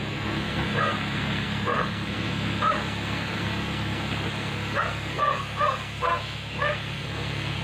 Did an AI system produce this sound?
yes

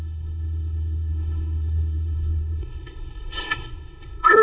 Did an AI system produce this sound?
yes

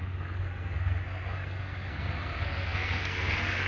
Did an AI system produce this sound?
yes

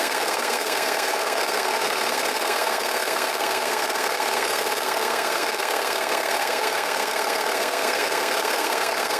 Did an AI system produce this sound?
yes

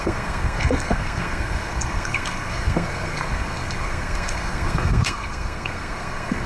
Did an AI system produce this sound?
yes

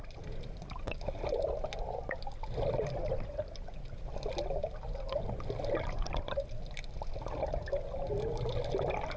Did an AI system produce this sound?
no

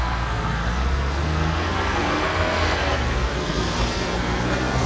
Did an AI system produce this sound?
yes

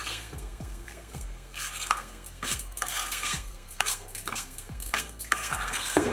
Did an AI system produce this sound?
yes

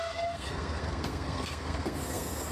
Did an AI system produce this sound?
yes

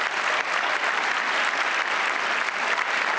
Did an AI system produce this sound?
no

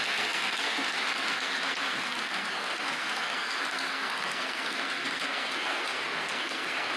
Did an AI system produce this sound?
yes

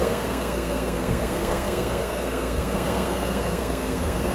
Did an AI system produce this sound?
yes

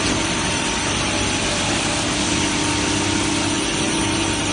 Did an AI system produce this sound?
no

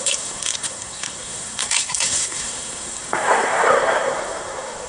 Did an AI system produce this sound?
yes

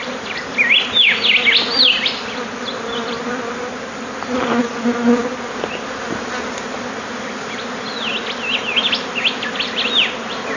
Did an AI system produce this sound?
no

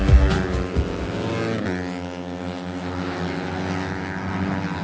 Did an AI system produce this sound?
no